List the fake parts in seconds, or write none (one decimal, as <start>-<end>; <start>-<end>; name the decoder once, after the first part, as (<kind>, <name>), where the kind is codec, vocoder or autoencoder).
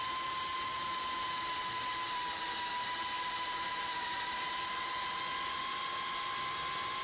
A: none